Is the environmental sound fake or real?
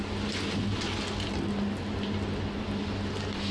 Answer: real